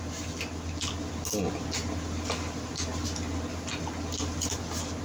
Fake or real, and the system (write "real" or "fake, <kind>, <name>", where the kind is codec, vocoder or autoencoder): real